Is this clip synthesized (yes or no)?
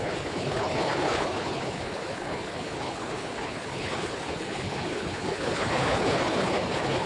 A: yes